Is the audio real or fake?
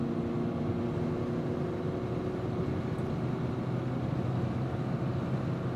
real